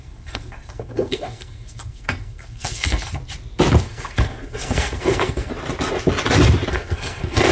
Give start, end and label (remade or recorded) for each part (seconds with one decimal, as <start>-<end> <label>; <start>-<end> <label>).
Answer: 0.0-3.2 remade; 3.2-3.8 recorded; 3.8-5.5 remade; 5.5-6.7 recorded; 6.7-7.5 remade